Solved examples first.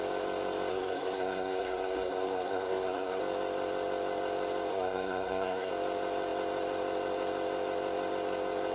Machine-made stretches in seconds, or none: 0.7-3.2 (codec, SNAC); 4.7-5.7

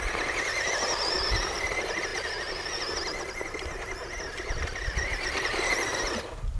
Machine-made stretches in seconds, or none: none

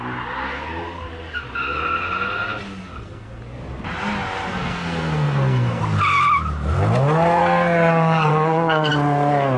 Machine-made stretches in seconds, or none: 2.8-3.4 (codec, SNAC); 4.5-5.8; 7.4-8.9

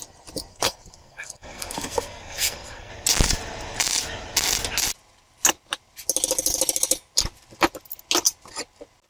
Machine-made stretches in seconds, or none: 0.5-2.9 (codec, SNAC)

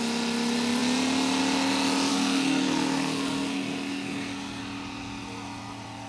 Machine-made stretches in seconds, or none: 2.1-4.6 (codec, SNAC)

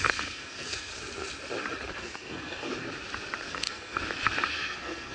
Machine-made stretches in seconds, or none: 0.0-0.9 (codec, SNAC); 1.9-2.7; 3.5-4.0; 4.5-5.1

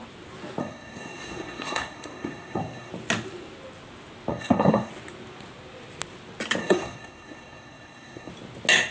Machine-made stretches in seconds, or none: 0.6-2.9 (codec, SNAC); 4.3-4.9; 6.6-8.3